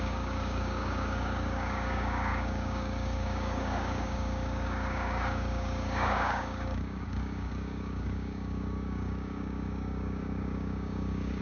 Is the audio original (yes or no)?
no